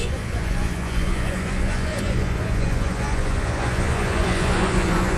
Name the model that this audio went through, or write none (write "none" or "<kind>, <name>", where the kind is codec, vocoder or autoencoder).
vocoder, Vocos